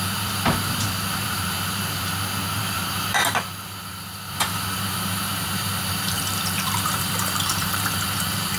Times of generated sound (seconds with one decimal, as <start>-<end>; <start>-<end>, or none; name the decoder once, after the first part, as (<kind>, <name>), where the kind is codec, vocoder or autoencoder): 0.0-8.6 (vocoder, BigVGAN v2)